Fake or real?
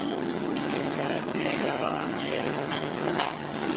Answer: fake